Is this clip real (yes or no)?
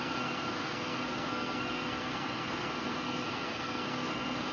no